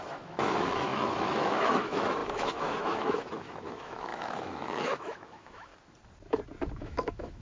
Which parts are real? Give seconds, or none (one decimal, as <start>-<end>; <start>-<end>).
5.7-6.7